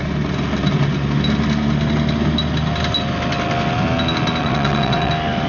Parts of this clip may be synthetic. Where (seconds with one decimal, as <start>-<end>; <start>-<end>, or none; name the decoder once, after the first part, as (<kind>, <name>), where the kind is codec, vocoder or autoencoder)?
4.4-5.1 (vocoder, WaveNeXt)